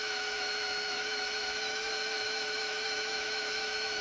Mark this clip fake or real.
fake